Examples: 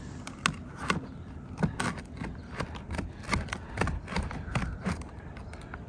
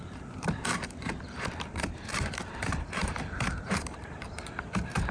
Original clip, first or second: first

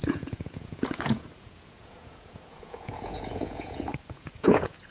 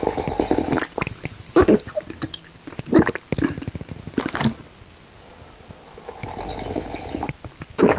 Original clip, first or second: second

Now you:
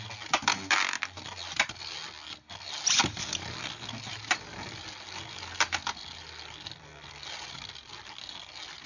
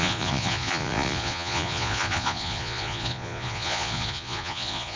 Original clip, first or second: first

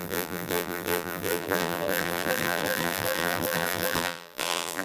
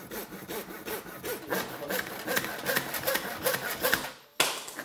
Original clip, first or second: second